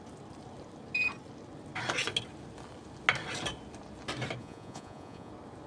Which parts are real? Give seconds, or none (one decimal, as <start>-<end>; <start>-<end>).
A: 0.0-4.4; 5.3-5.7